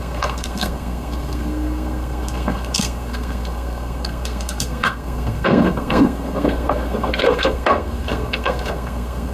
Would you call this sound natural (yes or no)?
no